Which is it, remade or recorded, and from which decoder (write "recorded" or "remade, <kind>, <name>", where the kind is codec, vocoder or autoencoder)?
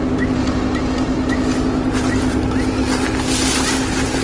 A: recorded